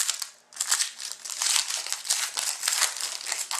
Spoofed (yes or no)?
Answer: no